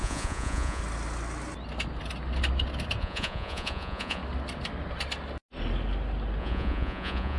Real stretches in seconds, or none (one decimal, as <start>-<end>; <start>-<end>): 0.8-3.0; 4.2-6.4